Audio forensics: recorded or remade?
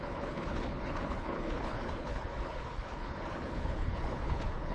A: remade